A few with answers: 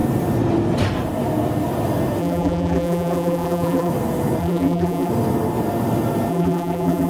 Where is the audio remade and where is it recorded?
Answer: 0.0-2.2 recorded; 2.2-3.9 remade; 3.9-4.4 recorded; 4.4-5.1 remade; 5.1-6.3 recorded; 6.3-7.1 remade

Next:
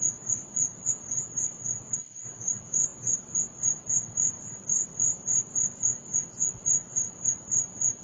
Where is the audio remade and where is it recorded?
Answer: 0.0-1.2 recorded; 1.2-1.8 remade; 1.8-8.0 recorded

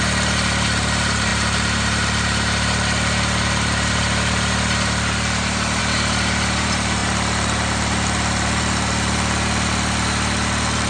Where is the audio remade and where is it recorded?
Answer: 0.0-10.9 remade

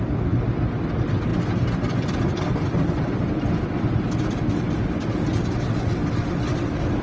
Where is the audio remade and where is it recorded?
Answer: 0.0-7.0 recorded